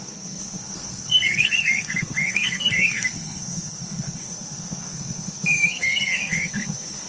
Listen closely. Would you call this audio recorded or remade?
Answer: remade